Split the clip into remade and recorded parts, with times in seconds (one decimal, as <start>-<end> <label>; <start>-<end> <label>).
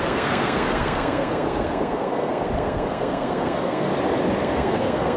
0.0-3.9 remade; 3.9-4.4 recorded; 4.4-5.2 remade